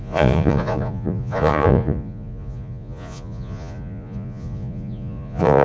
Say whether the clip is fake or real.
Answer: fake